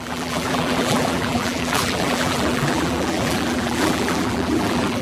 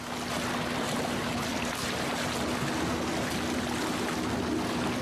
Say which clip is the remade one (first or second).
first